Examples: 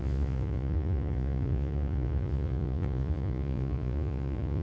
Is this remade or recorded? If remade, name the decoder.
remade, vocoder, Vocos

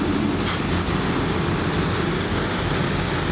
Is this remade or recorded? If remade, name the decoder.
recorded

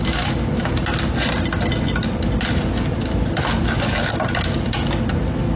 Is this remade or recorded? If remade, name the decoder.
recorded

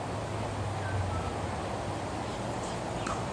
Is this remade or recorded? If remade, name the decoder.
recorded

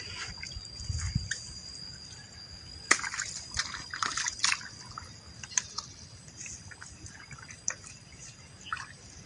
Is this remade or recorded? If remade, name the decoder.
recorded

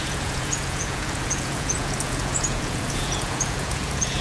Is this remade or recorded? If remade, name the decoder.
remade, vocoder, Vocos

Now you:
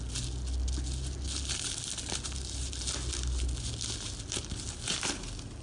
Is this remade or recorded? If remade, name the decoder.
recorded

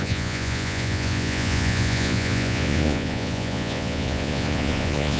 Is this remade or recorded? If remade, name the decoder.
remade, vocoder, Vocos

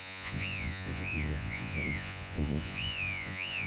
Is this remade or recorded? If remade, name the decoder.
remade, vocoder, Vocos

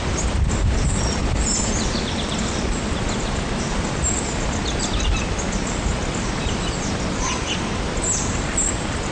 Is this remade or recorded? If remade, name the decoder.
recorded